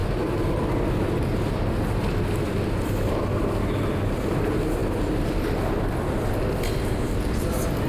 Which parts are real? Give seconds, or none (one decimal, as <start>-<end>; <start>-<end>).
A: 0.0-7.9